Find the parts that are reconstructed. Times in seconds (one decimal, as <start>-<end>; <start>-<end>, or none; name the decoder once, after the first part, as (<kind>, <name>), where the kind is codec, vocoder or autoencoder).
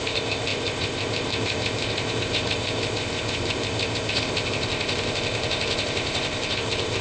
0.0-7.0 (codec, ZipCodec)